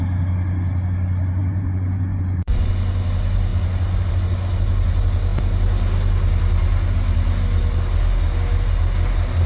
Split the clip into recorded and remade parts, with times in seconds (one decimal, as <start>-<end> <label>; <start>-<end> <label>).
0.0-1.4 recorded; 1.4-2.7 remade; 2.7-9.5 recorded